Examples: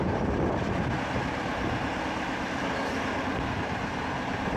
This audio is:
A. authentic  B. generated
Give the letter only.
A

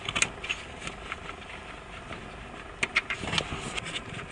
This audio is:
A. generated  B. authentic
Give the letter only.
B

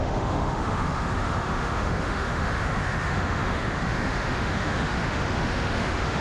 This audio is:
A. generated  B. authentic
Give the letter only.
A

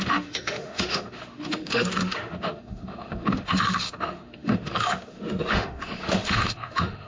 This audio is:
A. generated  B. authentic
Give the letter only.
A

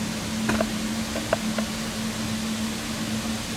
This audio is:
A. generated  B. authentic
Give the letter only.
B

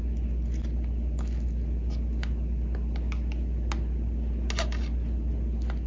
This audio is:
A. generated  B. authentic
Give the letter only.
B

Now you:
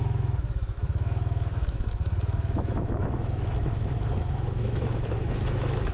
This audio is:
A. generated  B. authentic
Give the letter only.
A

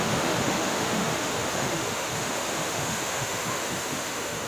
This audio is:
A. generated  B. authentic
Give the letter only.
A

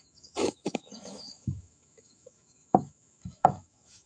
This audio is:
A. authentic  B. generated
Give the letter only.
B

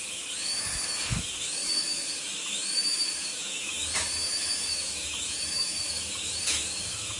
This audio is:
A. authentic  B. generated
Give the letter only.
B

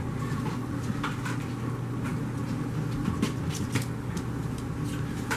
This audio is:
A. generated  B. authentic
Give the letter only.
B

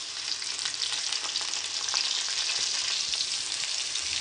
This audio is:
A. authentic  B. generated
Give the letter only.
A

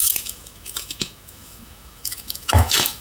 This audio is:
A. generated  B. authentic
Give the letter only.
A